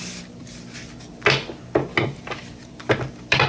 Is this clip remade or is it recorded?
recorded